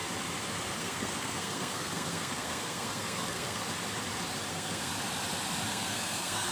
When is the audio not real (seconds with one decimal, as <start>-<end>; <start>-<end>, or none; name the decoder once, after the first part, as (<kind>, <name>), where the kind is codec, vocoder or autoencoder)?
0.8-3.6 (codec, SNAC); 4.5-4.9; 5.7-6.5